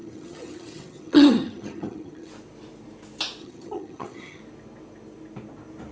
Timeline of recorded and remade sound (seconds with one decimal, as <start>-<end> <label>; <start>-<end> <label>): 0.0-2.3 remade; 2.3-3.4 recorded; 3.4-4.4 remade; 4.4-5.9 recorded